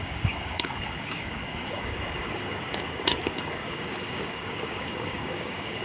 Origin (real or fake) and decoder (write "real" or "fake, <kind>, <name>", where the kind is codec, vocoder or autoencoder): fake, codec, DAC